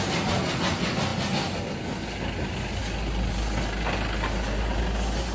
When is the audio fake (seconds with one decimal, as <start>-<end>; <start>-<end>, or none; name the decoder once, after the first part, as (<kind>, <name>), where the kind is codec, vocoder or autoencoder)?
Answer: none